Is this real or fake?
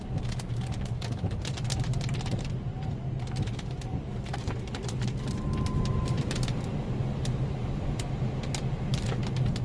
fake